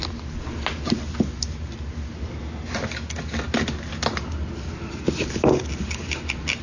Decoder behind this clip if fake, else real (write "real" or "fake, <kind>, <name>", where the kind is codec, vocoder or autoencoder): real